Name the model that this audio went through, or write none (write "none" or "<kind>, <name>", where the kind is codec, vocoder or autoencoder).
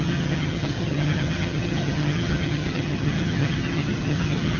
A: vocoder, HiFi-GAN